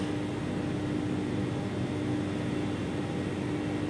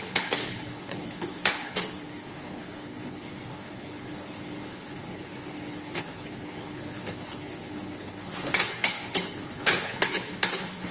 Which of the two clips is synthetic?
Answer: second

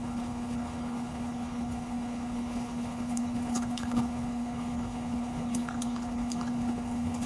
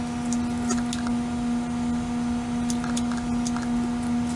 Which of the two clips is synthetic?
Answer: first